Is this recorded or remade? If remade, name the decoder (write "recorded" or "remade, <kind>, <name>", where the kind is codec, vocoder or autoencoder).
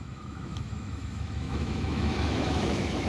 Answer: remade, autoencoder, DAC-VAE